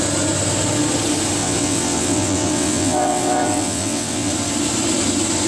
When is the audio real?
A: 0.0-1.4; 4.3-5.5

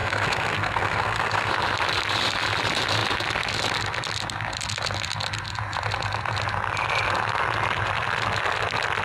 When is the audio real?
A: 1.5-9.0

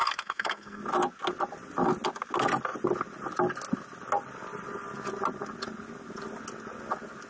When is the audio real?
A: 0.8-7.3

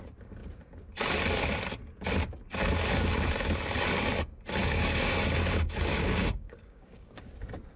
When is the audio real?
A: 0.0-4.6; 7.2-7.8

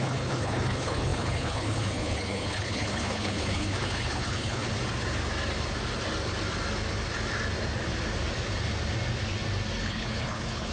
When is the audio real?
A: 4.6-9.8